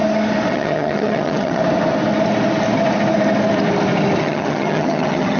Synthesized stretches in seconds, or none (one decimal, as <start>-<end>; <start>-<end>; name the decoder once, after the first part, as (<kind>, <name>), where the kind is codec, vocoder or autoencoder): 0.5-1.6 (vocoder, HiFi-GAN); 4.2-5.4